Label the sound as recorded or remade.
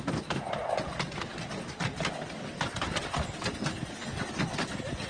recorded